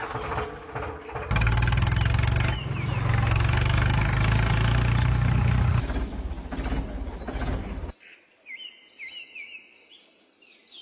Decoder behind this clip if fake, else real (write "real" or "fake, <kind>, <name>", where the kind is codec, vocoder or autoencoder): real